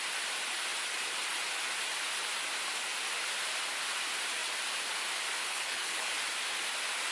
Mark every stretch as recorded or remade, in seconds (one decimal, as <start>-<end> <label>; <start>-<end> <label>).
0.0-5.4 recorded; 5.4-6.1 remade; 6.1-7.1 recorded